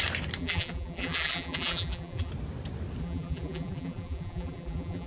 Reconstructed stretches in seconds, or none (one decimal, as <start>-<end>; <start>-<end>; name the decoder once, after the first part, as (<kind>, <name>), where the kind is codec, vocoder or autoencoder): 0.4-2.3 (vocoder, BigVGAN v2); 3.0-5.1